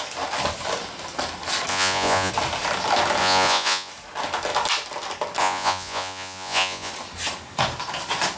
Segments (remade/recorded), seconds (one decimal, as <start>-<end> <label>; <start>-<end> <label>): 0.0-1.7 recorded; 1.7-2.3 remade; 2.3-3.2 recorded; 3.2-3.9 remade; 3.9-5.4 recorded; 5.4-6.9 remade; 6.9-8.4 recorded